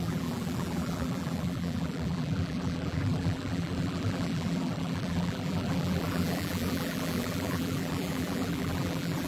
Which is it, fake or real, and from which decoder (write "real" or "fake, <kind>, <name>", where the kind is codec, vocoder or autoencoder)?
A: fake, vocoder, BigVGAN v2